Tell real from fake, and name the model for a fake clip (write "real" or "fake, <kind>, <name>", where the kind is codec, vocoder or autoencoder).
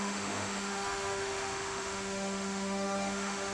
fake, autoencoder, DAC-VAE